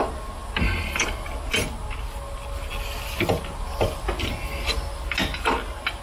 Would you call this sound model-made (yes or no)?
no